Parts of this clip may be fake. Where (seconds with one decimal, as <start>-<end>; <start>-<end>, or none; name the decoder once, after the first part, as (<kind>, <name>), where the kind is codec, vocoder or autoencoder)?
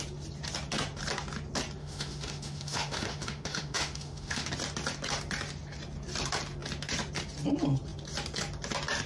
1.8-4.5 (autoencoder, DAC-VAE)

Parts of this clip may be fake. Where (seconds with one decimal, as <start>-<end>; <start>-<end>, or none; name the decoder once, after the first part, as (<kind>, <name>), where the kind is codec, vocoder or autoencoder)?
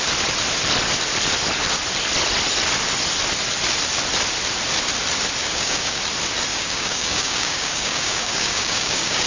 5.4-6.0 (codec, DAC); 6.5-9.3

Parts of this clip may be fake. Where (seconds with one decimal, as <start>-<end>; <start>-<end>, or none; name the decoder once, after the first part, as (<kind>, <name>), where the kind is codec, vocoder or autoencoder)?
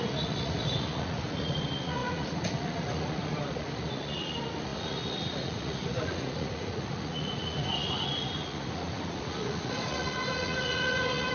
0.0-11.3 (vocoder, Vocos)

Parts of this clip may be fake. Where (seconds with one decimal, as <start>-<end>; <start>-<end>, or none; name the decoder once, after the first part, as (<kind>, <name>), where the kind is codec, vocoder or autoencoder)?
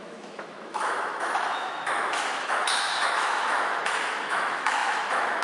0.0-5.4 (autoencoder, DAC-VAE)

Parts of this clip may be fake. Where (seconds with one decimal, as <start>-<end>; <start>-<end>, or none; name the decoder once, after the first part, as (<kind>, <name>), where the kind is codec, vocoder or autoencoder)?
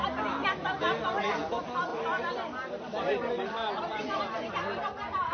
none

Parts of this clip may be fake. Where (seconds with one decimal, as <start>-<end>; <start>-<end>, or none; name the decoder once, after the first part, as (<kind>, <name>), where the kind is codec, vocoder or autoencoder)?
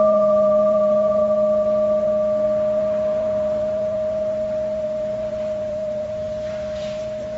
0.0-1.2 (vocoder, BigVGAN v2); 2.8-7.4